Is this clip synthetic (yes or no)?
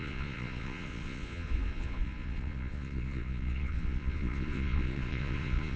yes